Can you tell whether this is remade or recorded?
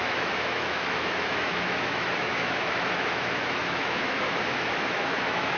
remade